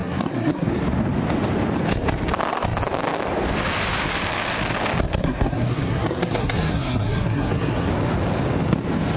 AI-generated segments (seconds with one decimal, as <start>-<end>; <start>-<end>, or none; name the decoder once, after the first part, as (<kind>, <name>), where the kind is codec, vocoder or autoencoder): 0.0-0.7 (codec, SNAC); 5.2-7.9